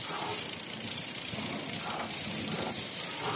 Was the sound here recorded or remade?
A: recorded